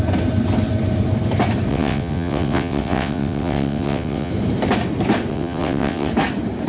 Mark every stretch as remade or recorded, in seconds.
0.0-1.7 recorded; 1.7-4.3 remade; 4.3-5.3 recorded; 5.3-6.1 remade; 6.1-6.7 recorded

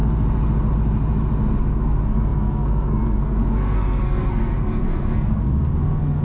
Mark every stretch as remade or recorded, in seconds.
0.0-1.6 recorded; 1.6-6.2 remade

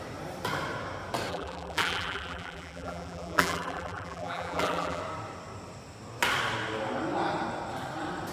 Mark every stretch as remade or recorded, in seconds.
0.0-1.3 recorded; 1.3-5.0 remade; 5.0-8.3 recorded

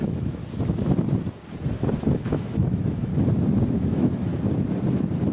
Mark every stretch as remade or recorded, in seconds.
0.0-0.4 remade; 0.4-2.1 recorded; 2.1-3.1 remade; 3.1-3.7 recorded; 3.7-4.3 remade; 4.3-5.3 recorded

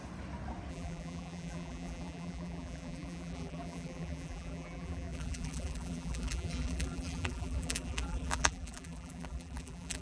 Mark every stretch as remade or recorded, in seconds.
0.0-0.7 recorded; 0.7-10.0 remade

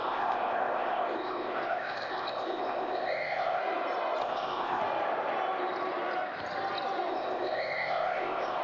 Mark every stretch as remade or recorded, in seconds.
0.0-3.6 remade; 3.6-4.2 recorded; 4.2-4.8 remade; 4.8-7.1 recorded; 7.1-8.6 remade